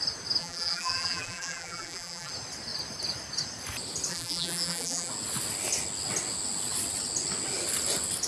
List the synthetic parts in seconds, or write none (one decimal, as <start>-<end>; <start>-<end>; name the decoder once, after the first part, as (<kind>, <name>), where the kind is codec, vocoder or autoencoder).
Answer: 0.4-2.3 (vocoder, BigVGAN v2); 4.1-5.1